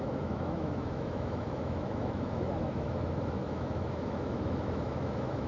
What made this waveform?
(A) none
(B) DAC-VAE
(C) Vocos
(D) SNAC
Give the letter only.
B